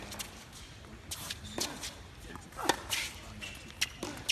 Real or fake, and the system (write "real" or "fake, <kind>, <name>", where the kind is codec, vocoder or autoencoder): real